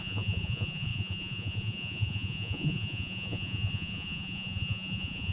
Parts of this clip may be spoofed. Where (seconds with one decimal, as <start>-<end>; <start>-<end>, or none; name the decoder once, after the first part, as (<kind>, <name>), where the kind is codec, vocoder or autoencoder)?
0.0-5.3 (vocoder, Vocos)